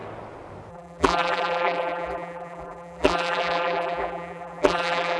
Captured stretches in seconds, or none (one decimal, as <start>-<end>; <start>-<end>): 0.0-0.7